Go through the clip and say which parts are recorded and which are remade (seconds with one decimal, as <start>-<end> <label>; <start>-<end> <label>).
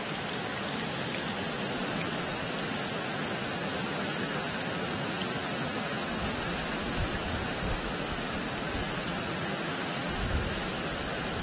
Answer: 0.0-8.8 recorded; 8.8-9.6 remade; 9.6-11.4 recorded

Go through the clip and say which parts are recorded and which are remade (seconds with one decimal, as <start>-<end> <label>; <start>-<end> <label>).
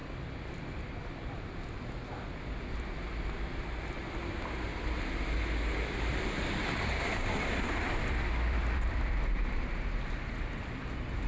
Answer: 0.0-0.9 remade; 0.9-6.1 recorded; 6.1-9.7 remade; 9.7-11.3 recorded